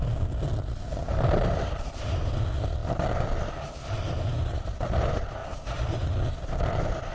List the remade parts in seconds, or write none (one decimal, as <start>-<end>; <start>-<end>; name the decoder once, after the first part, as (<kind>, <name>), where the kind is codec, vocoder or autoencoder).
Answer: 1.1-2.3 (vocoder, BigVGAN v2); 5.4-6.6